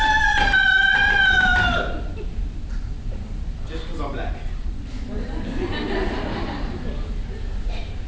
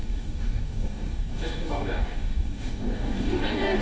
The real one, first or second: first